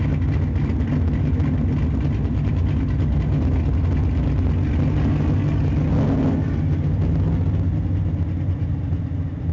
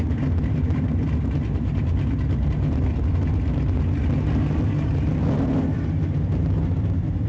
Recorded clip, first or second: first